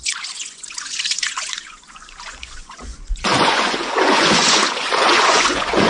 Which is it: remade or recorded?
remade